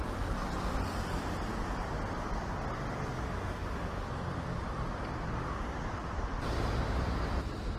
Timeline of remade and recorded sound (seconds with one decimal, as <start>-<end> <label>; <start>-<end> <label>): 0.0-7.8 recorded